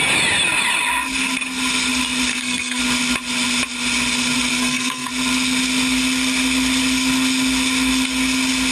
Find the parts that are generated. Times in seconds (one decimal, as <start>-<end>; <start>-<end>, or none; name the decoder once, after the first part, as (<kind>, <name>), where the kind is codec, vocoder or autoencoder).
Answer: 2.3-2.8 (codec, SNAC); 4.5-5.1